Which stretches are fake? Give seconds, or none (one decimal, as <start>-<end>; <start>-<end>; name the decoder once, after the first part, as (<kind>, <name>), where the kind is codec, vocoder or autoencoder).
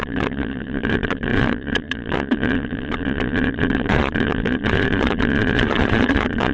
0.0-6.5 (vocoder, Vocos)